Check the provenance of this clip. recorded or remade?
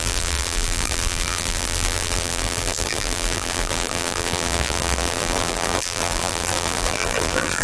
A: remade